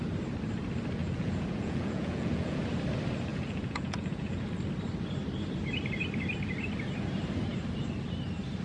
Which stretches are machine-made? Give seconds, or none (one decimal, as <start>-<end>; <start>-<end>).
1.0-2.6; 3.3-4.5